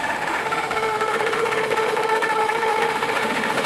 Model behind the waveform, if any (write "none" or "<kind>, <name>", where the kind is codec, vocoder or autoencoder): autoencoder, DAC-VAE